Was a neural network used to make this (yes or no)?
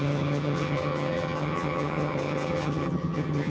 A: yes